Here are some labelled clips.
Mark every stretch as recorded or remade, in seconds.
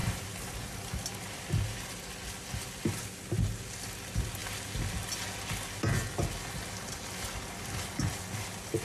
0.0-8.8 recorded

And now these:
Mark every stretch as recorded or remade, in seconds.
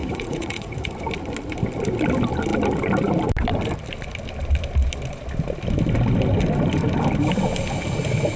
0.0-0.9 remade; 0.9-8.4 recorded